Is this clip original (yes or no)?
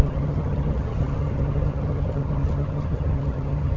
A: no